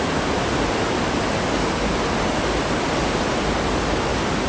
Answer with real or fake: real